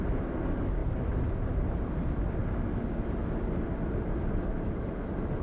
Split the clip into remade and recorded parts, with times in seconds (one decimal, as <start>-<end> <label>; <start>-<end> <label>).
0.0-5.4 recorded